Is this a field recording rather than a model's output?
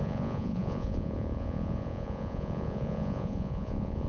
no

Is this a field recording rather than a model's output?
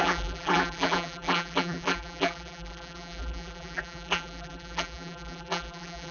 no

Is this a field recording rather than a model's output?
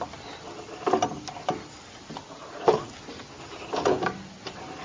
yes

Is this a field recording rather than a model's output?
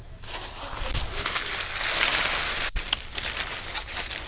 yes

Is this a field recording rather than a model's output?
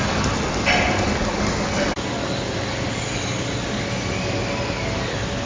yes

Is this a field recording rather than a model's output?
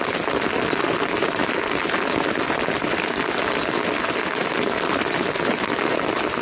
yes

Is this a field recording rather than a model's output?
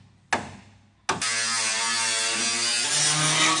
yes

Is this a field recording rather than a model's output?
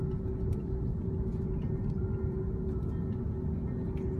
yes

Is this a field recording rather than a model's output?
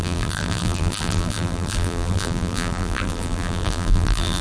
no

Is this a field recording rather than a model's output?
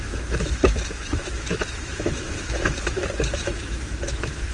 no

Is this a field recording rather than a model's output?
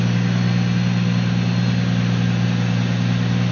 yes